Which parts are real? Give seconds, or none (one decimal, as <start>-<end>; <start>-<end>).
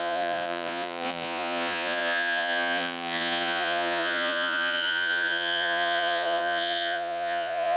none